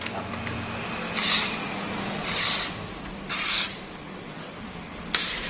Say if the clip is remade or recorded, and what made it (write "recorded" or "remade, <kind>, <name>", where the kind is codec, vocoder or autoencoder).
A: recorded